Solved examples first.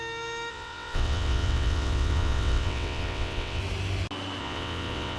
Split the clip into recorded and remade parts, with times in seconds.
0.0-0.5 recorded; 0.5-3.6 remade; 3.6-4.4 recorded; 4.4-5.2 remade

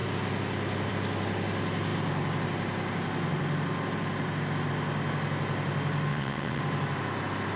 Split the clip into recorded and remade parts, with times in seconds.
0.0-6.1 recorded; 6.1-6.6 remade; 6.6-7.6 recorded

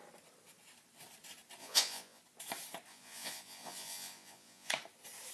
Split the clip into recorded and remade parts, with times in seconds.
0.0-1.6 recorded; 1.6-2.2 remade; 2.2-2.9 recorded; 2.9-4.7 remade; 4.7-5.3 recorded

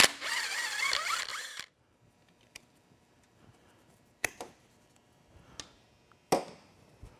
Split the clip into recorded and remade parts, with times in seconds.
0.0-1.3 recorded; 1.3-4.7 remade; 4.7-7.2 recorded